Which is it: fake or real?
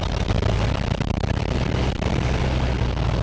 real